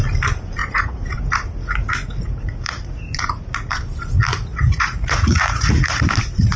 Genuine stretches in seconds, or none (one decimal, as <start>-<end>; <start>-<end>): 0.0-0.6; 3.7-4.3; 6.0-6.6